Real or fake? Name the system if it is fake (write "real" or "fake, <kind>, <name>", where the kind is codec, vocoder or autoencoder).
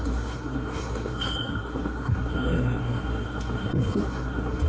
fake, codec, SNAC